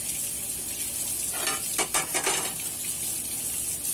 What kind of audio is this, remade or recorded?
recorded